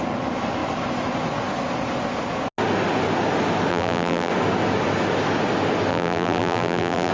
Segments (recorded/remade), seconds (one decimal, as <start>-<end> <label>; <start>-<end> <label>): 0.0-3.7 recorded; 3.7-4.3 remade; 4.3-5.9 recorded; 5.9-7.1 remade